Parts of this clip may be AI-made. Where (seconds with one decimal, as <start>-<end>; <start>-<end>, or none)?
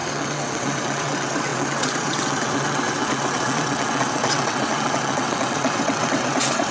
0.0-6.7